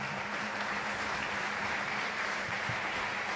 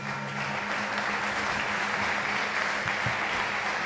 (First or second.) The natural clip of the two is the second